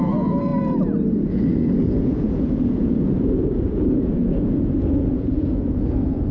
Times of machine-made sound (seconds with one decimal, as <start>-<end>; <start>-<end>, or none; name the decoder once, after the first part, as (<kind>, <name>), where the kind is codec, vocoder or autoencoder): 0.0-0.5 (vocoder, Vocos); 1.8-6.3